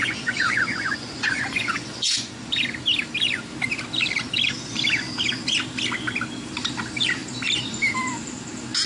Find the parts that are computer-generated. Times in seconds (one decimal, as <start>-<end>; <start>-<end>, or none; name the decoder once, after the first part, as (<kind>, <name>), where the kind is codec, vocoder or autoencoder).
0.0-2.6 (vocoder, Vocos)